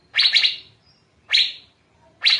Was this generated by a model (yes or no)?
yes